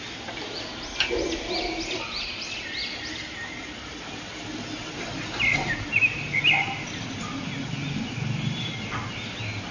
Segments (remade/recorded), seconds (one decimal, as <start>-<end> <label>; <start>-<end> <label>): 0.0-9.7 recorded